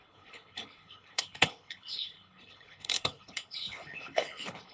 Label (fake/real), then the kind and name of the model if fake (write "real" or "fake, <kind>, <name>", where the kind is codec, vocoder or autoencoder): fake, codec, HILCodec